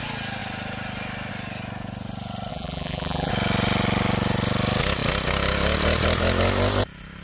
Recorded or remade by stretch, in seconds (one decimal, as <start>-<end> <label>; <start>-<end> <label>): 0.0-2.5 recorded; 2.5-3.3 remade; 3.3-7.2 recorded